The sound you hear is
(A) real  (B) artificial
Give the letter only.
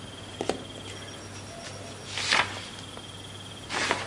A